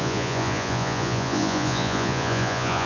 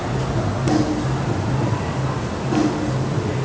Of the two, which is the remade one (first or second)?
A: first